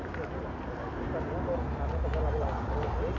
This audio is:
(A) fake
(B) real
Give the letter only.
B